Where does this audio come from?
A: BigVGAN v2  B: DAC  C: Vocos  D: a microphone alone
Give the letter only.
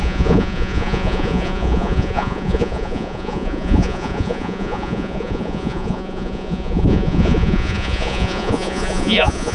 C